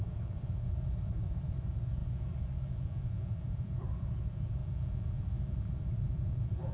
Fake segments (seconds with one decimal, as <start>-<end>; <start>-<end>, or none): 0.0-2.0; 3.3-4.6; 5.7-6.7